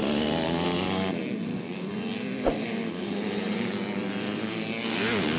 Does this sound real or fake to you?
real